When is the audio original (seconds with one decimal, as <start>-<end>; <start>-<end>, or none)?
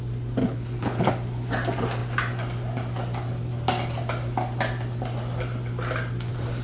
0.0-0.4; 1.1-6.6